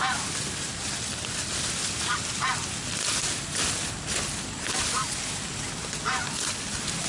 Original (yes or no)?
yes